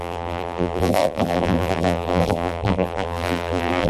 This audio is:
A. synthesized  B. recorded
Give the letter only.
A